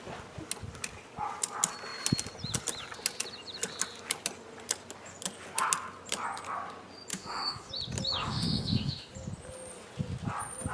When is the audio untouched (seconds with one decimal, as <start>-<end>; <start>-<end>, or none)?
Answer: 0.0-7.1; 7.7-8.2; 9.1-10.7